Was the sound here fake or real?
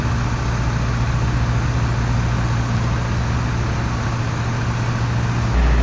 real